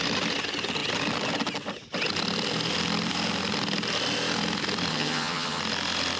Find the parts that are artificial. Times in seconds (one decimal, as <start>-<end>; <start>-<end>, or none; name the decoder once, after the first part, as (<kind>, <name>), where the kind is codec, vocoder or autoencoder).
4.9-5.6 (vocoder, HiFi-GAN)